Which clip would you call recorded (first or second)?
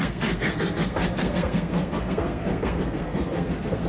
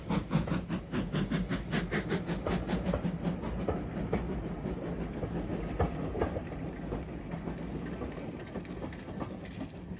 second